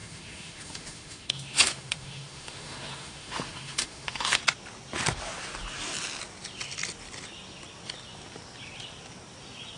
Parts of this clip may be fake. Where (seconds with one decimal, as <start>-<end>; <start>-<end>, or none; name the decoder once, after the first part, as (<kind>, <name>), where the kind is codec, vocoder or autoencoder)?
0.0-4.4 (autoencoder, DAC-VAE)